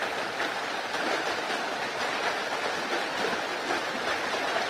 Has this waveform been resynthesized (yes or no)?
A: no